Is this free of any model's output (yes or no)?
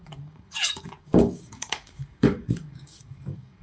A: no